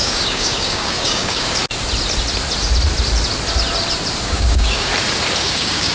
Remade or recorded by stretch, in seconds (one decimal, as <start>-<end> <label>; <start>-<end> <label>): 0.0-1.6 remade; 1.6-4.2 recorded; 4.2-4.9 remade; 4.9-5.4 recorded; 5.4-5.9 remade